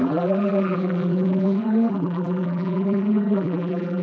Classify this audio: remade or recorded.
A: remade